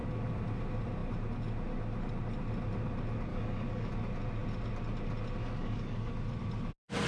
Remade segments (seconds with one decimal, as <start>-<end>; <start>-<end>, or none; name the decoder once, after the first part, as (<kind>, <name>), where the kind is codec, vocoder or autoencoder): 3.3-3.9 (codec, DAC); 5.4-6.1